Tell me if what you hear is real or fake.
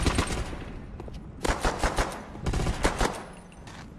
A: real